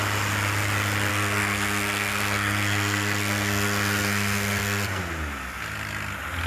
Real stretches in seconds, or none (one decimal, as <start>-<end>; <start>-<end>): 0.0-1.1; 5.0-6.5